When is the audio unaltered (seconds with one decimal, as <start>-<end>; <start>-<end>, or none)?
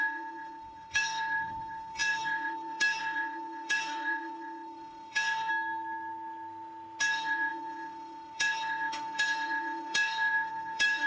5.5-7.0